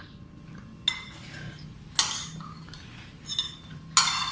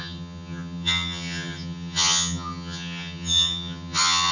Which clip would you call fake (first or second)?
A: second